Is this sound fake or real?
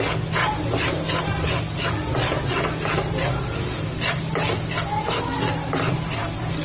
real